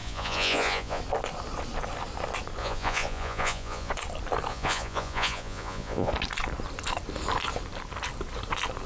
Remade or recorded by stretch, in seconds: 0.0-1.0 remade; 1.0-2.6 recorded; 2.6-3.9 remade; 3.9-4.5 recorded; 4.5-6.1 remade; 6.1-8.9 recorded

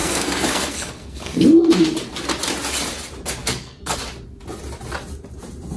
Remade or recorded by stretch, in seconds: 0.0-1.8 remade; 1.8-3.4 recorded; 3.4-4.0 remade; 4.0-5.8 recorded

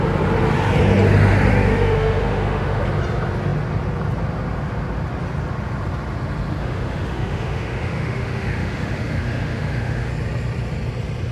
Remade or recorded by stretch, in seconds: 0.0-1.5 recorded; 1.5-2.8 remade; 2.8-6.6 recorded; 6.6-10.1 remade; 10.1-11.3 recorded

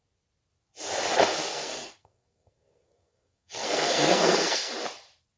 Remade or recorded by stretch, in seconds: 0.0-1.5 recorded; 1.5-4.7 remade; 4.7-5.4 recorded

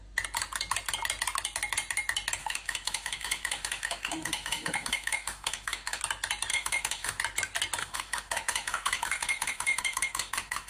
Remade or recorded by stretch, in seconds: 0.0-2.4 recorded; 2.4-6.0 remade; 6.0-6.5 recorded; 6.5-7.2 remade; 7.2-7.8 recorded; 7.8-10.7 remade

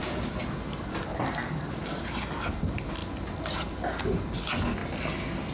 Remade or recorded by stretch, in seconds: 0.0-5.5 recorded

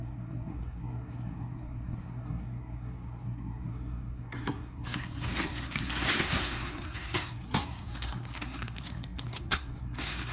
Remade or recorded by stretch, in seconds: 0.0-10.3 remade

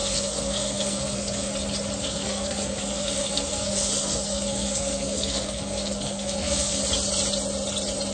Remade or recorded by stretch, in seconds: 0.0-1.5 remade; 1.5-2.0 recorded; 2.0-6.8 remade; 6.8-8.1 recorded